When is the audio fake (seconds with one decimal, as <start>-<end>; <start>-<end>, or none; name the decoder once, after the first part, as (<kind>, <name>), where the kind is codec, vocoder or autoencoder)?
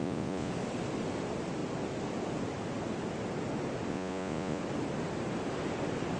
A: 0.0-0.5 (vocoder, Vocos); 3.9-4.6